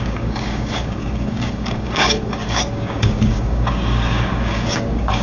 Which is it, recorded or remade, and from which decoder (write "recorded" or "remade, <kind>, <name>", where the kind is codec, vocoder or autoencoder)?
remade, codec, DAC